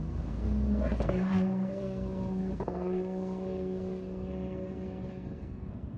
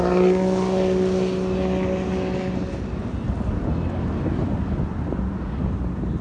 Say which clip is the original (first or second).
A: second